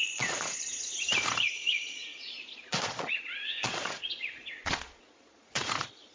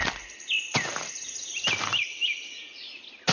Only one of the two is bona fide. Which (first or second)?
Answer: second